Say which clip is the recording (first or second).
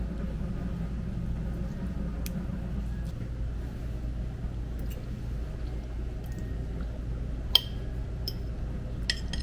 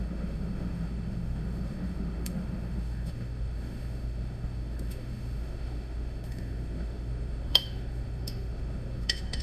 first